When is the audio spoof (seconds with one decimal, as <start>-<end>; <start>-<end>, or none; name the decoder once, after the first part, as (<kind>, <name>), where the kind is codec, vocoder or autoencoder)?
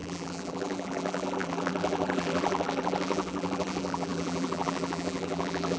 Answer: 0.0-5.8 (vocoder, BigVGAN v2)